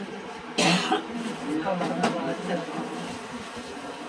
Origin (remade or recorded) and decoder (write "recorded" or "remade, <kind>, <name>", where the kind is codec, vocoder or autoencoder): recorded